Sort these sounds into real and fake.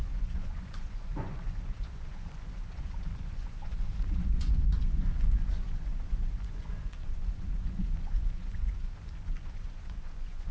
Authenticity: fake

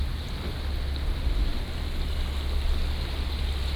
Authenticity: real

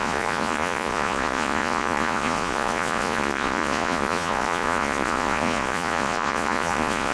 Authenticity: fake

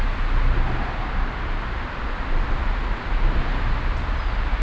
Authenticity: real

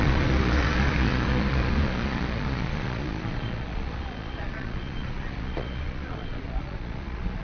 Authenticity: fake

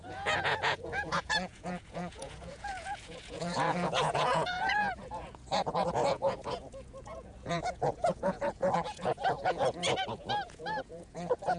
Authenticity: fake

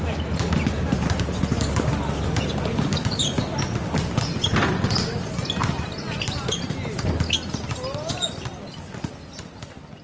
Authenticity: real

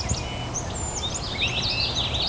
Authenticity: real